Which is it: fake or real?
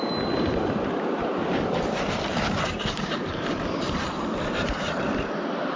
fake